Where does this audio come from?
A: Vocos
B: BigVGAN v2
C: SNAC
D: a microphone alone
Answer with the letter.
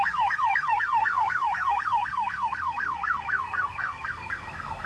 C